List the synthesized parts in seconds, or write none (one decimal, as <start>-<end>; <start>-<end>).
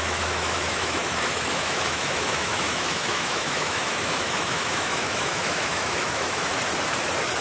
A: 0.0-6.5